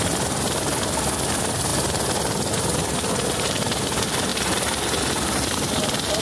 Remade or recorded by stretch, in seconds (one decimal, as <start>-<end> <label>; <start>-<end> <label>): 0.0-6.2 recorded